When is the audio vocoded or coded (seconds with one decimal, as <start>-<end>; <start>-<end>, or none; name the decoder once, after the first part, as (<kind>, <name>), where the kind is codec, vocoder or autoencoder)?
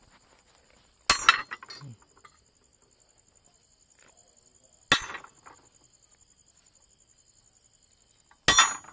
none